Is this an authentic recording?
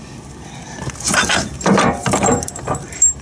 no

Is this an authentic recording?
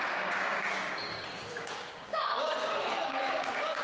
no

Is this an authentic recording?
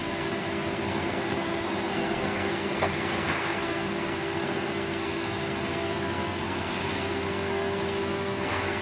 no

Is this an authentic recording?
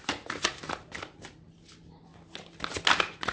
yes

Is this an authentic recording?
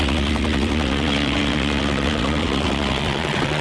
no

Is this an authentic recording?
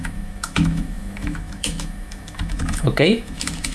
no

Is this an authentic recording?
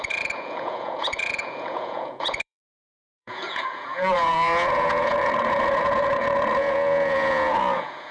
no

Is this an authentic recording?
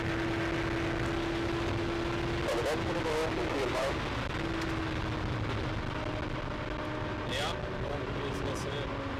yes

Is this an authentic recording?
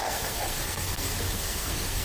no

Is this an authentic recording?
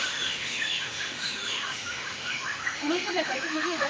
no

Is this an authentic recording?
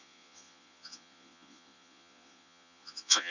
no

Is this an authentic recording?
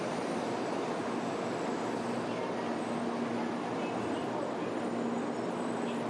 yes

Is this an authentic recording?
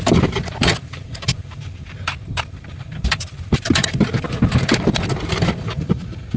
no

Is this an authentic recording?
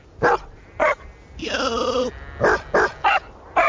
yes